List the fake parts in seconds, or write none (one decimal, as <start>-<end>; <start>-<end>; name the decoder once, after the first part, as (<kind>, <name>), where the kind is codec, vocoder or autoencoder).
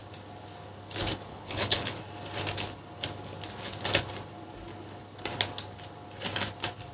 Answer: 1.3-2.0 (codec, HILCodec)